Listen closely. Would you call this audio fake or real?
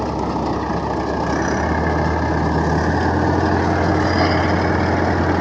real